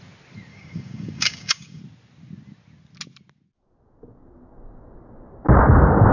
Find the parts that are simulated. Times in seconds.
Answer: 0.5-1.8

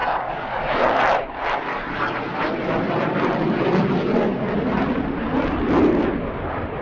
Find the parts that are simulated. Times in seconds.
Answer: 0.0-1.0; 1.7-2.2

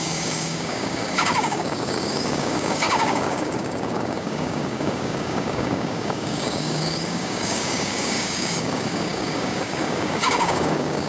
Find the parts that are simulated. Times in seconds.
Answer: 0.0-11.1

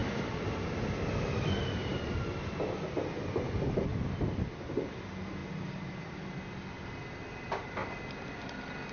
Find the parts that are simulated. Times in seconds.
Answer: none

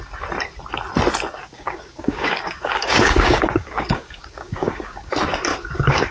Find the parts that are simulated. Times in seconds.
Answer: 1.4-5.1; 5.5-6.1

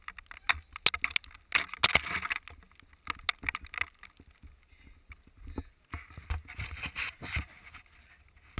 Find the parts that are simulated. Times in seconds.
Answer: none

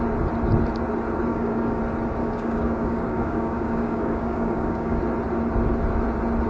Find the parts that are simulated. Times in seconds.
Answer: 1.3-1.8; 2.2-5.0

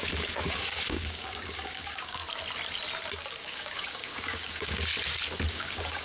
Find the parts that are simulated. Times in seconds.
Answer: 0.0-2.2; 3.4-4.9; 5.5-6.0